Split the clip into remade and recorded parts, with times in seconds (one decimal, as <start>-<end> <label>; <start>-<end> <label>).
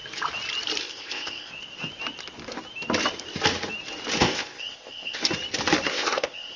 0.0-0.8 recorded; 0.8-1.5 remade; 1.5-4.2 recorded; 4.2-5.2 remade; 5.2-5.9 recorded; 5.9-6.6 remade